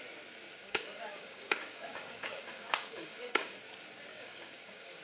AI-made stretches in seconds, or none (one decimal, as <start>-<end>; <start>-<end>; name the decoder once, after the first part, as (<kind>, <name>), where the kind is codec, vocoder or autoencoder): 0.6-3.6 (codec, DAC); 4.1-5.0